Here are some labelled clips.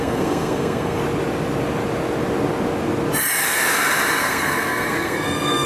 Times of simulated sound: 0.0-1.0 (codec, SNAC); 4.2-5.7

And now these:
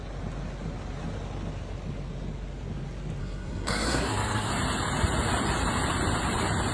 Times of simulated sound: 3.2-4.5 (codec, SNAC)

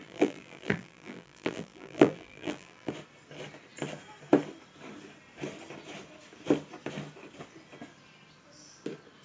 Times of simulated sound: 0.0-2.9 (vocoder, BigVGAN v2)

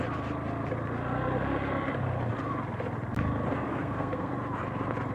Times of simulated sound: 3.7-4.3 (codec, SNAC)

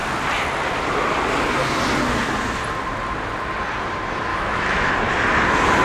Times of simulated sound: 4.3-4.9 (autoencoder, DAC-VAE)

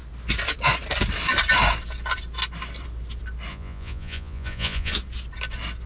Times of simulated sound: 3.5-4.9 (vocoder, Vocos)

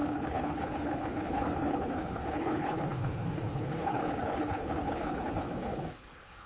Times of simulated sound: 0.0-6.5 (codec, HILCodec)

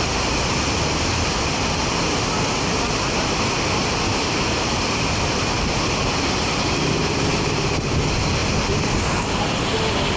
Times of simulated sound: 8.4-9.3 (vocoder, BigVGAN v2)